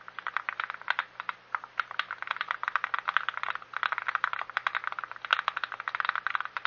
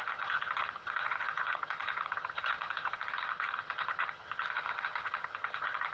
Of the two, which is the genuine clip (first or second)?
first